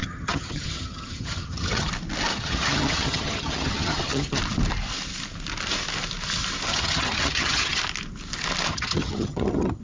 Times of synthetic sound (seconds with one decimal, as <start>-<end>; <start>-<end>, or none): 0.0-1.9; 2.3-4.4; 6.7-7.8; 8.7-9.8